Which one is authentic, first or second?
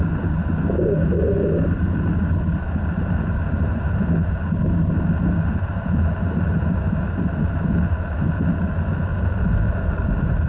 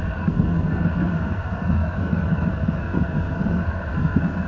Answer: first